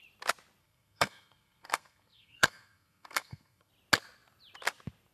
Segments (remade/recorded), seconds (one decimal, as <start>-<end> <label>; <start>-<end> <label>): 0.0-0.6 recorded; 0.6-3.7 remade; 3.7-5.1 recorded